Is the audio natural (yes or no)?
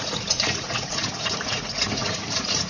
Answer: no